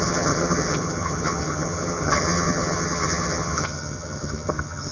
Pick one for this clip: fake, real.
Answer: fake